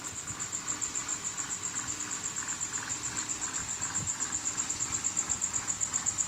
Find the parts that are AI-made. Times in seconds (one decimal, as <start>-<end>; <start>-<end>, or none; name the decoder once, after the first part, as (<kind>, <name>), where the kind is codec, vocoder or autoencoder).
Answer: 1.1-2.0 (vocoder, BigVGAN v2); 3.6-4.7